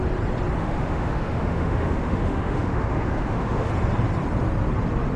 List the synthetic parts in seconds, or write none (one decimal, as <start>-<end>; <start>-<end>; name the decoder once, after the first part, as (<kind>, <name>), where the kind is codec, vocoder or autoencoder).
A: 0.6-3.7 (autoencoder, DAC-VAE)

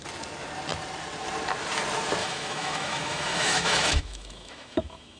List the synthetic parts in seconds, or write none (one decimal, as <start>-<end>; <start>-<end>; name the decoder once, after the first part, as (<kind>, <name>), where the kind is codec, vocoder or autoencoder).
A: 2.2-5.2 (autoencoder, DAC-VAE)

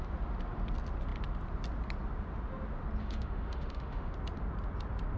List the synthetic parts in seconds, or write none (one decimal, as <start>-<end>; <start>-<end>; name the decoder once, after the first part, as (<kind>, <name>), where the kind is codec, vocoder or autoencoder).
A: 3.0-4.1 (autoencoder, DAC-VAE)